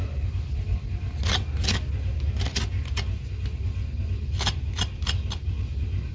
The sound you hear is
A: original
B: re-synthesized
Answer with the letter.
A